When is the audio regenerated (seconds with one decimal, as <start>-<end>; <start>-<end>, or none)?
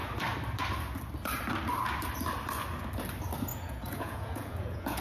3.5-5.0